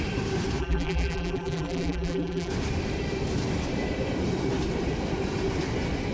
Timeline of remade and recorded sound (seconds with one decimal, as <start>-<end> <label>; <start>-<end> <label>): 0.0-0.6 recorded; 0.6-2.5 remade; 2.5-6.1 recorded